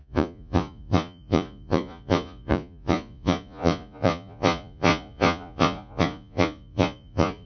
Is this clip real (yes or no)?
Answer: no